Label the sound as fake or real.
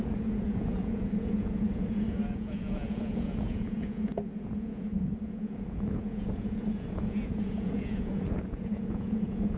fake